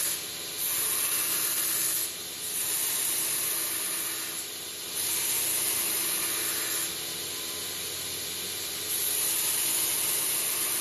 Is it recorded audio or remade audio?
recorded